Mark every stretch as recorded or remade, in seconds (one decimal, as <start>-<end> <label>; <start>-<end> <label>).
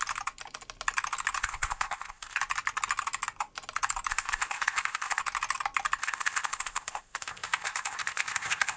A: 0.0-1.4 recorded; 1.4-2.4 remade; 2.4-4.1 recorded; 4.1-5.2 remade; 5.2-6.0 recorded; 6.0-8.8 remade